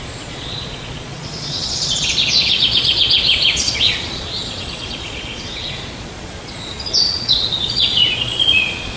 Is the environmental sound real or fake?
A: fake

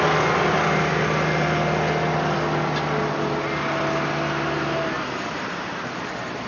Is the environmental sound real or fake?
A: real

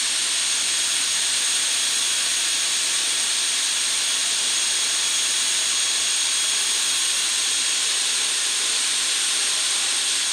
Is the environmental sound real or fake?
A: real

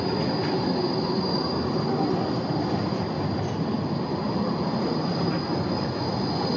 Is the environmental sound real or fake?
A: real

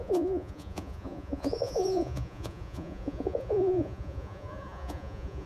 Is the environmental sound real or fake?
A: fake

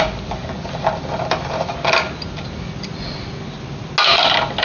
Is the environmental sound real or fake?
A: real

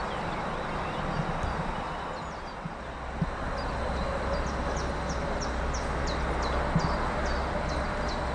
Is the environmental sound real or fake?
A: real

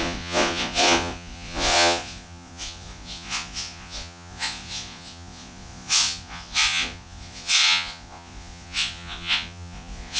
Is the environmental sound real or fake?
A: fake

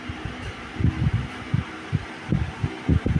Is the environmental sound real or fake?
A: real